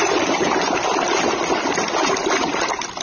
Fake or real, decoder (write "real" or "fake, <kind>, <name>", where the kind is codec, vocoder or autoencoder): real